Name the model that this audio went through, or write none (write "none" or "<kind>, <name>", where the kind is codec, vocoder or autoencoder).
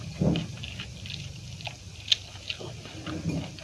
none